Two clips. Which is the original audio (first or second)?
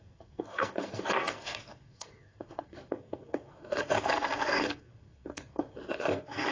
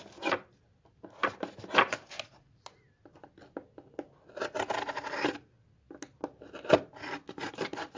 second